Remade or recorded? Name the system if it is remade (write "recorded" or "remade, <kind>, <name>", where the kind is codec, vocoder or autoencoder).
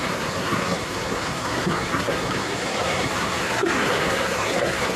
remade, codec, SNAC